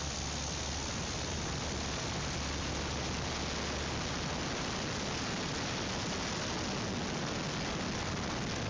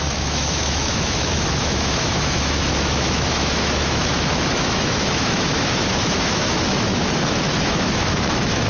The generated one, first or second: second